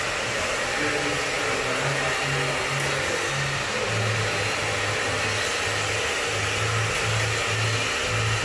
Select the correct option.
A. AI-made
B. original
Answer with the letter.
B